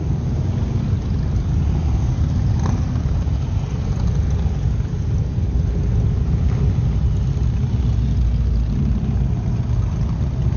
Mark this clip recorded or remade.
recorded